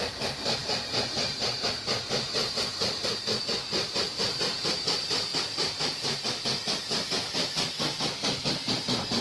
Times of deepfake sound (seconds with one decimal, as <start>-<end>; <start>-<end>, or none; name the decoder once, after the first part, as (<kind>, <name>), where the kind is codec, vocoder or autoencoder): 0.6-3.2 (vocoder, BigVGAN v2)